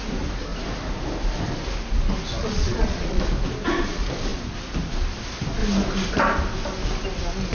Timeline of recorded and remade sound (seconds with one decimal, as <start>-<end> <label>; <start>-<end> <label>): 0.0-2.4 recorded; 2.4-3.2 remade; 3.2-7.5 recorded